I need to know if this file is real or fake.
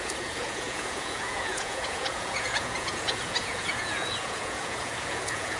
fake